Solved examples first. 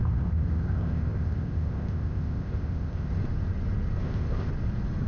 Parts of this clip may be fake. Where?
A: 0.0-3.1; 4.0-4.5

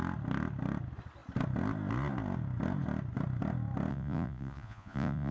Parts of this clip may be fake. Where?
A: 3.9-5.3

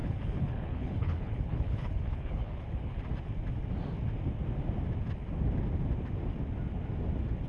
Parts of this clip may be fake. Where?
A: 0.0-3.0

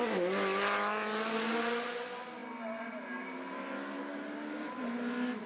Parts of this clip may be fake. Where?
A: none

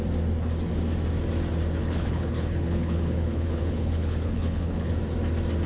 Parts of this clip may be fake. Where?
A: 1.8-4.9

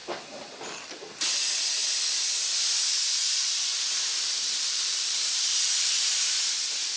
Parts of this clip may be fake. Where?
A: 3.2-6.2

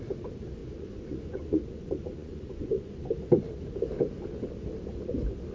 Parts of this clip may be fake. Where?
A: 0.6-2.9